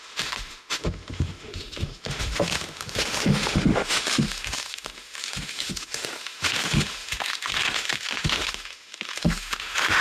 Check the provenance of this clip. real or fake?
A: fake